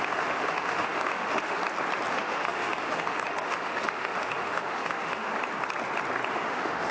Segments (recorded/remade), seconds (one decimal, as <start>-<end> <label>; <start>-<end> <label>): 0.0-1.6 remade; 1.6-2.1 recorded; 2.1-5.3 remade; 5.3-6.3 recorded; 6.3-6.9 remade